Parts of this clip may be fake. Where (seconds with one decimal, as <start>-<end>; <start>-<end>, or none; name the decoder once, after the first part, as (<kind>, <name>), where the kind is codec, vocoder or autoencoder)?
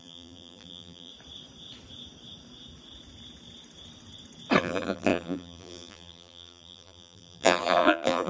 0.0-1.1 (vocoder, BigVGAN v2); 4.6-8.3